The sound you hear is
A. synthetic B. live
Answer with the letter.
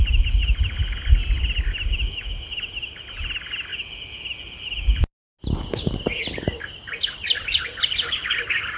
B